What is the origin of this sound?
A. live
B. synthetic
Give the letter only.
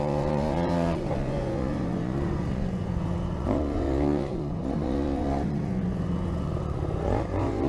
B